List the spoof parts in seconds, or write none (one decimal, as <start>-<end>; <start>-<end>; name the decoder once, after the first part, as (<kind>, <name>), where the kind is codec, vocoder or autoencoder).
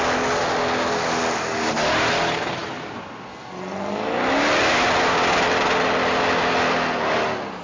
none